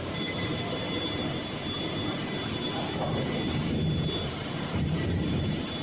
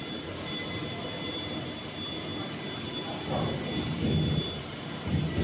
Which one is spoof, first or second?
first